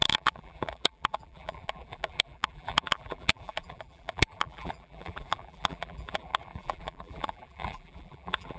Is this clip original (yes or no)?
no